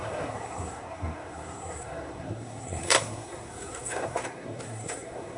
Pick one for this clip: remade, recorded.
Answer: remade